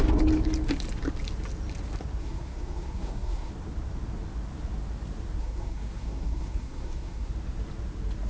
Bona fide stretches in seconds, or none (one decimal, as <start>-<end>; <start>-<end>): 0.0-2.2; 3.5-5.4; 7.3-8.3

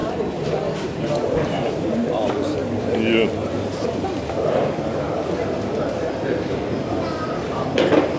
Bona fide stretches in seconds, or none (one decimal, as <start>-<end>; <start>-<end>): 0.0-0.5; 2.6-4.4